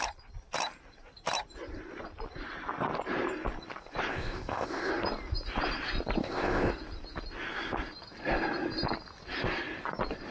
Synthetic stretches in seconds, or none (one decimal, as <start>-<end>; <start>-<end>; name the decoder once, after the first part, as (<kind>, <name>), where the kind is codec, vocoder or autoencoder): 4.1-4.9 (codec, ZipCodec); 6.2-6.7

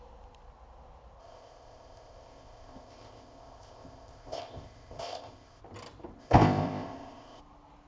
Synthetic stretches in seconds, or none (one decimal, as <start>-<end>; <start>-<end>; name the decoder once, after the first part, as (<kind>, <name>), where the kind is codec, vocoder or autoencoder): 1.2-5.6 (codec, ZipCodec); 6.2-7.4

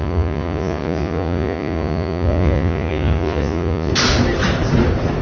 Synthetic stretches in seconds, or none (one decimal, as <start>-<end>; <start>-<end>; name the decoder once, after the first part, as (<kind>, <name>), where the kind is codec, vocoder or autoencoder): 0.0-3.9 (vocoder, Vocos)

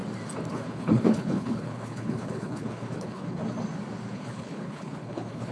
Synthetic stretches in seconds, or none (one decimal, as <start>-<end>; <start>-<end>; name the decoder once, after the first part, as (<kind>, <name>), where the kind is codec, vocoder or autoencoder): 0.5-3.4 (codec, HILCodec); 4.1-5.5

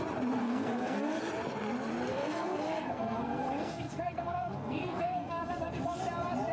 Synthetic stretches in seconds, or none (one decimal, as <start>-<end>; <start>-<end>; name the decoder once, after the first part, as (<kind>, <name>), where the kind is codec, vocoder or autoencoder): 0.4-1.2 (codec, SNAC); 2.1-6.0

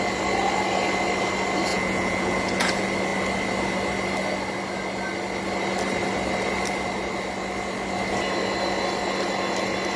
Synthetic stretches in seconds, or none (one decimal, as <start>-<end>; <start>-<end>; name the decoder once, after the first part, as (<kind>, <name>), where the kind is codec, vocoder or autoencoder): 1.7-2.7 (vocoder, Vocos)